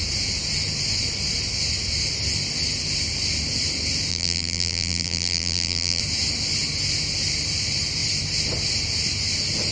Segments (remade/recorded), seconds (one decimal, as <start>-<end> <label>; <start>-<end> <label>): 0.0-4.1 recorded; 4.1-6.0 remade; 6.0-9.7 recorded